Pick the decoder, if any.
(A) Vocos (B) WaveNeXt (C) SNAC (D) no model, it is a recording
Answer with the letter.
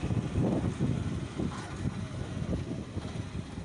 D